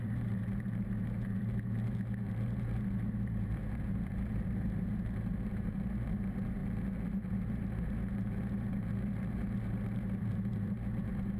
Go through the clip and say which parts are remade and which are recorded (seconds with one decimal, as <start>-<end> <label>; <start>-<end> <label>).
0.0-6.6 remade; 6.6-7.3 recorded; 7.3-11.4 remade